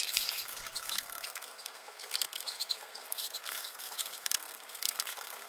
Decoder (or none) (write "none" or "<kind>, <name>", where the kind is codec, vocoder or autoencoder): codec, SNAC